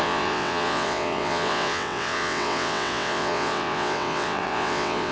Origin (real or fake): fake